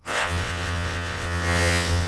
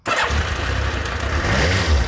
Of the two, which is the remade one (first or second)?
first